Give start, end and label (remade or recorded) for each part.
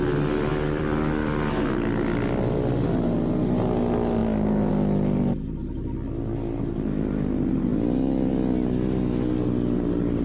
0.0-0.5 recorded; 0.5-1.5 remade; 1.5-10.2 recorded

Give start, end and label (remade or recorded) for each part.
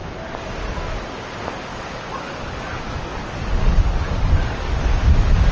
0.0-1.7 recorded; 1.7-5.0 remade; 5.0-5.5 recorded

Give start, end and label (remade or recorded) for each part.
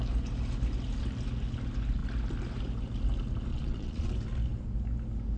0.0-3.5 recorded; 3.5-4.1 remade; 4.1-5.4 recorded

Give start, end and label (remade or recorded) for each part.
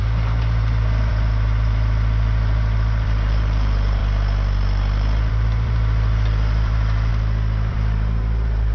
0.0-4.0 remade; 4.0-5.3 recorded; 5.3-7.1 remade; 7.1-7.7 recorded; 7.7-8.7 remade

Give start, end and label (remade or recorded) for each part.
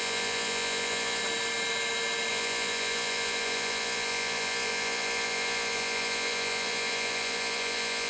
0.0-1.2 remade; 1.2-2.3 recorded; 2.3-8.1 remade